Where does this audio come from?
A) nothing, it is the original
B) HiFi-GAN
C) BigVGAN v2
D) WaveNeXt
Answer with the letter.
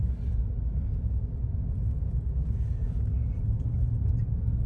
A